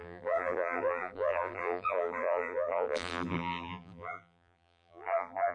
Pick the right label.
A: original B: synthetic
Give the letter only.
B